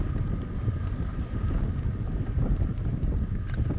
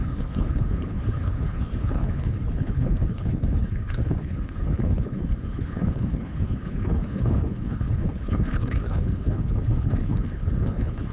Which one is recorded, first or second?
first